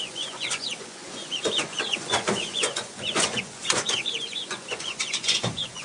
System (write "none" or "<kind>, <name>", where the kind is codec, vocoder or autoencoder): vocoder, Vocos